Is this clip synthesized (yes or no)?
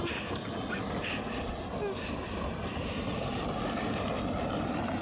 no